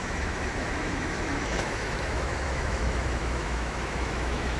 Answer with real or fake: fake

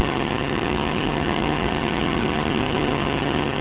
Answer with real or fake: fake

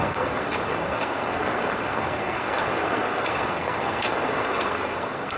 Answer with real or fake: fake